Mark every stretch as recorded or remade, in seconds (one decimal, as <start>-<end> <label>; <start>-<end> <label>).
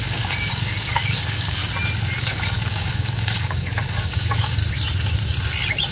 0.0-1.6 remade; 1.6-2.2 recorded; 2.2-4.6 remade; 4.6-5.9 recorded